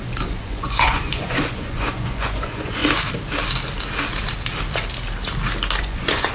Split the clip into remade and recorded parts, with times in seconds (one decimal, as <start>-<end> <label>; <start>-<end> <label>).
0.0-2.8 remade; 2.8-5.8 recorded; 5.8-6.3 remade